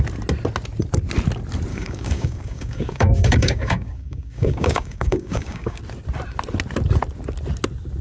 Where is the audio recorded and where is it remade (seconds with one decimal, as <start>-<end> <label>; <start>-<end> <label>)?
0.0-1.7 recorded; 1.7-5.8 remade; 5.8-8.0 recorded